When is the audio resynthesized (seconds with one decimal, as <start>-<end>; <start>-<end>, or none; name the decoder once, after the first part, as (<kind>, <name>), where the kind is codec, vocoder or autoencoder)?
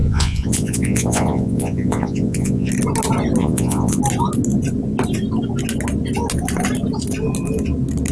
0.0-2.7 (vocoder, Vocos); 3.4-4.0